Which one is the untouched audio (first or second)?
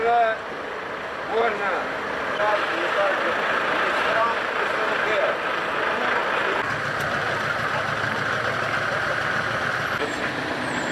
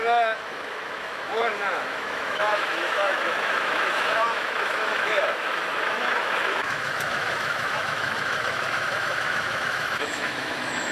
first